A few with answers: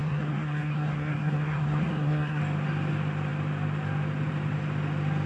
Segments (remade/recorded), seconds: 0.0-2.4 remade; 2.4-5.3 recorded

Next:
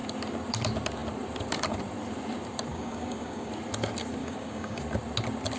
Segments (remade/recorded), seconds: 0.0-2.7 recorded; 2.7-3.5 remade; 3.5-4.2 recorded; 4.2-4.8 remade; 4.8-5.6 recorded

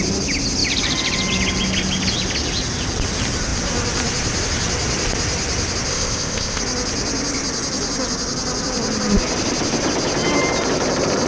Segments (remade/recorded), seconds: 0.0-5.9 recorded; 5.9-6.6 remade; 6.6-11.3 recorded

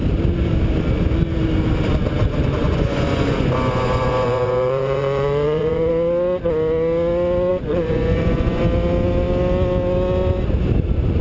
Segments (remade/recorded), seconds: 0.0-2.6 recorded; 2.6-5.9 remade; 5.9-7.5 recorded; 7.5-8.6 remade; 8.6-11.2 recorded